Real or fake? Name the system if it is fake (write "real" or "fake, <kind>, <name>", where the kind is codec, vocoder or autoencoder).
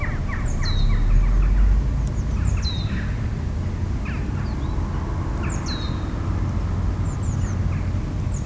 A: real